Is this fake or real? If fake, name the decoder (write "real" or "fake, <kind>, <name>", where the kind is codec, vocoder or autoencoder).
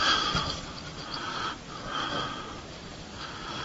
real